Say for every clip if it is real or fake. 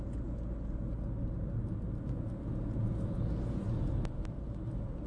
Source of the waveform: real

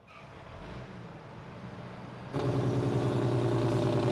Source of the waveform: real